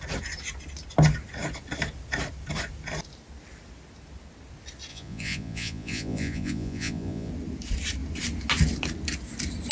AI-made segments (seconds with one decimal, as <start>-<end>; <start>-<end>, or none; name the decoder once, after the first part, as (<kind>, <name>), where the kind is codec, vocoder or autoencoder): 4.9-7.3 (vocoder, Vocos)